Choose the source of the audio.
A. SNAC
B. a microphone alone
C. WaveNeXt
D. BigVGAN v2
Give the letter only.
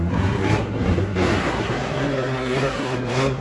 A